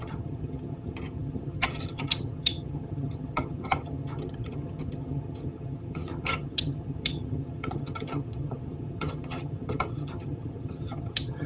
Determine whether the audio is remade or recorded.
remade